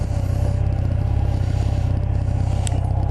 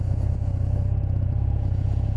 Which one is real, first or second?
first